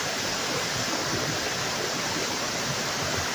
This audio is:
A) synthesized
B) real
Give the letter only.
A